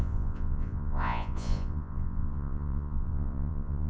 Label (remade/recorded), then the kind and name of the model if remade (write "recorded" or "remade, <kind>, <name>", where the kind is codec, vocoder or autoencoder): remade, vocoder, Vocos